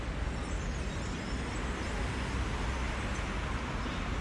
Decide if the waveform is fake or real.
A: real